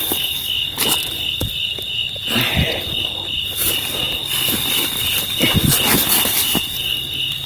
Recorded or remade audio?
recorded